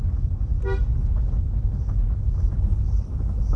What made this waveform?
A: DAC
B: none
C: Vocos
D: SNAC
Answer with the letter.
B